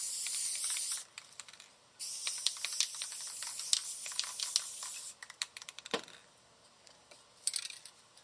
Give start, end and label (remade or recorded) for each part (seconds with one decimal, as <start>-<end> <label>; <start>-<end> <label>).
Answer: 0.0-8.2 recorded